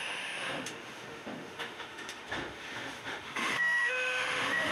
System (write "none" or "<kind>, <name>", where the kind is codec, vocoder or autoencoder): autoencoder, DAC-VAE